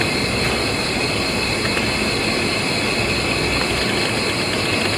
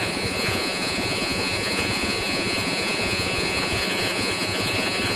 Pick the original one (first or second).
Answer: first